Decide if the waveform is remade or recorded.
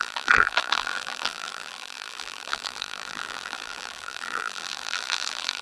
remade